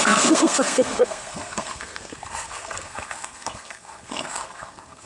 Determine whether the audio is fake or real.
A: fake